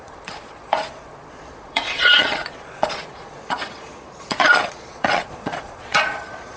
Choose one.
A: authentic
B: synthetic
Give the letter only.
B